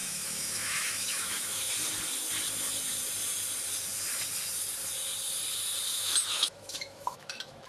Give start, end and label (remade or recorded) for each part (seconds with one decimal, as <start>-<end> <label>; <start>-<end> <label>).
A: 0.0-1.7 remade; 1.7-5.9 recorded; 5.9-7.7 remade